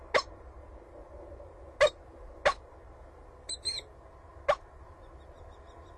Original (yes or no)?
yes